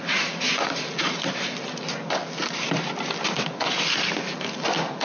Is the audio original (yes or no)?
yes